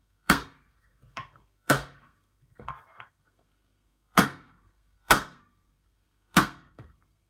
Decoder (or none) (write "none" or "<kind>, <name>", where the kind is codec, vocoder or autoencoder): codec, SNAC